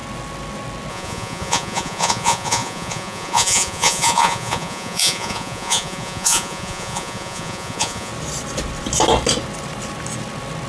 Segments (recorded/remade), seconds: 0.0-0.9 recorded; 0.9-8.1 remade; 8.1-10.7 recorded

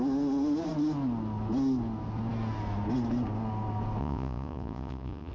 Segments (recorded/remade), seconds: 0.0-4.0 recorded; 4.0-5.3 remade

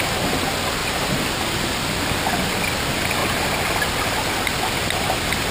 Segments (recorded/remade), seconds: 0.0-5.5 recorded

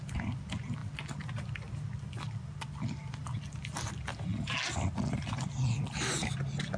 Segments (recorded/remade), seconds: 0.0-6.8 recorded